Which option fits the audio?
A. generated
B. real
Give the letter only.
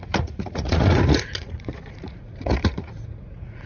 A